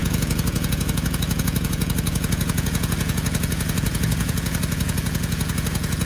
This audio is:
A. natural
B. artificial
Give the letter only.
B